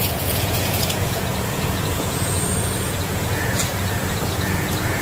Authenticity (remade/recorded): remade